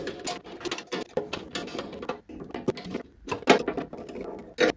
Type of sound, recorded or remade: recorded